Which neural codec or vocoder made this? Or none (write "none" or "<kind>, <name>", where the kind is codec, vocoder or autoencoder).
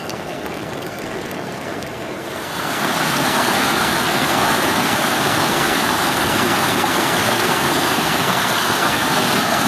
codec, SNAC